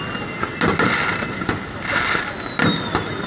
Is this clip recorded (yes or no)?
yes